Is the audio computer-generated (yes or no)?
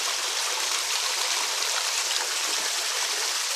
no